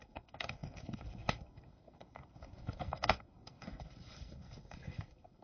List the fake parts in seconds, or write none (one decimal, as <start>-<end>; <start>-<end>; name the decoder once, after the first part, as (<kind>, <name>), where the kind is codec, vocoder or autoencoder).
0.0-5.4 (codec, SNAC)